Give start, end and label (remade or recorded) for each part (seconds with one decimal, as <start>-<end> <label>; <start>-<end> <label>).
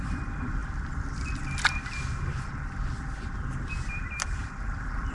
0.0-5.1 recorded